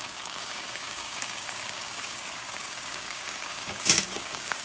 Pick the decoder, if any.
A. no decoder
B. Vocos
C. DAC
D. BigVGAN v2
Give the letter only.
C